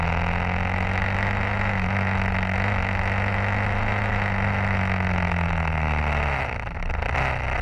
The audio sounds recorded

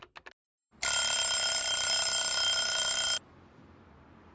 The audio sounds recorded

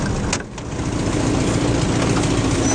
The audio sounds recorded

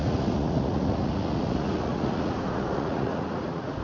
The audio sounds remade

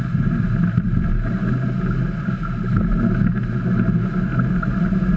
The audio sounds recorded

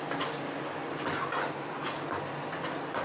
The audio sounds recorded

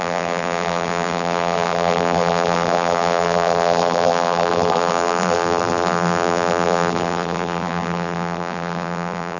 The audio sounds remade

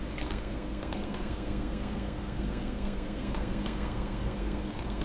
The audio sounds remade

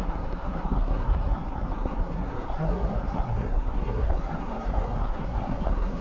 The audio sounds remade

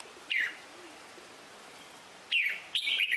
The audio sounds remade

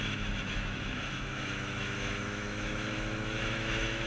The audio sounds remade